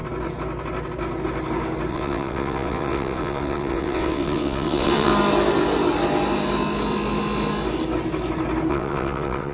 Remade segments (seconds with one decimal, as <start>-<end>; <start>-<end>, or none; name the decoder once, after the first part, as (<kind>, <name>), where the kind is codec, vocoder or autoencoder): 1.9-5.1 (vocoder, WaveNeXt); 8.7-9.5